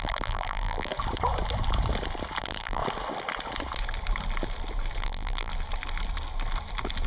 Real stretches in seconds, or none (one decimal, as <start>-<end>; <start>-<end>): 0.9-2.4; 2.8-5.0; 5.5-7.1

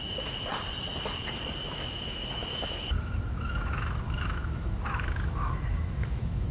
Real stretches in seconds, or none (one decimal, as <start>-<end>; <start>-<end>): 0.5-1.6

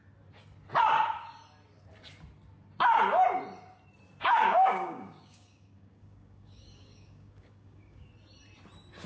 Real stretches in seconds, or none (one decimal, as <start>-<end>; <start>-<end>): 0.0-4.2; 8.1-9.1

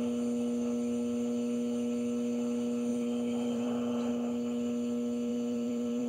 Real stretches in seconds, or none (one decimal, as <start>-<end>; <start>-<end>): 0.0-2.9; 4.1-5.3

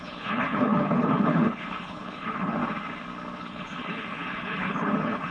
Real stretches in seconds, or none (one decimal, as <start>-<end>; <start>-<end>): 2.6-3.4

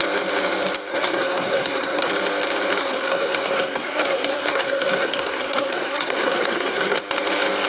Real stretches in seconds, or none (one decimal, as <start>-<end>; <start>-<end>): 0.0-0.9; 2.1-2.8; 7.0-7.7

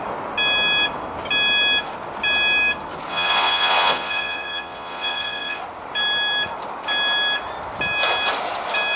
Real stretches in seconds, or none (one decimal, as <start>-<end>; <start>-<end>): 0.0-3.1; 5.6-9.0

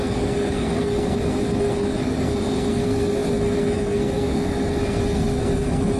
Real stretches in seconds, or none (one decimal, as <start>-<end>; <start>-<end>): none